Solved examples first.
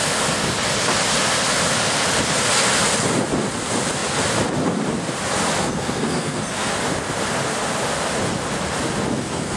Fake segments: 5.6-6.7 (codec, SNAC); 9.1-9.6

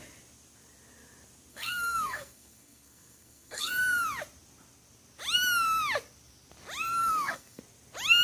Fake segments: 1.5-3.7 (codec, SNAC); 7.0-7.6

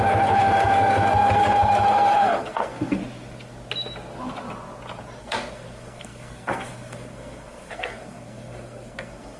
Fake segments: 0.0-3.0 (codec, SNAC); 5.2-9.4

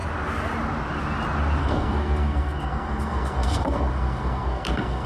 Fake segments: 1.6-5.1 (codec, SNAC)